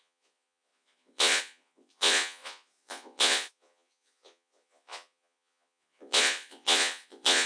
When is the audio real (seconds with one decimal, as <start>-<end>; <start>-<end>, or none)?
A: none